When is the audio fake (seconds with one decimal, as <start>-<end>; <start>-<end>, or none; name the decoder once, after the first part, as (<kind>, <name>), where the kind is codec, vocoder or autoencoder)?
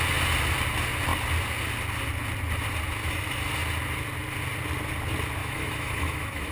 5.4-6.5 (autoencoder, DAC-VAE)